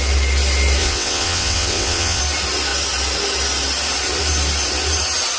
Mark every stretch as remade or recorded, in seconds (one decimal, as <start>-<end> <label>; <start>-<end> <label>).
0.0-0.8 recorded; 0.8-2.2 remade; 2.2-5.4 recorded